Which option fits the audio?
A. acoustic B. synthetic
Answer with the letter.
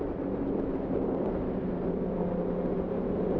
A